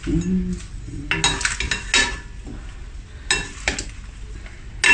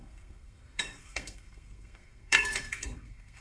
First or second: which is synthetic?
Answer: second